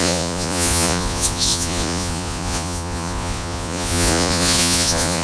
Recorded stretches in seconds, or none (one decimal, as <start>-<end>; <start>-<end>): none